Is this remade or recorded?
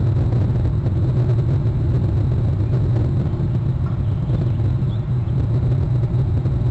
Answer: recorded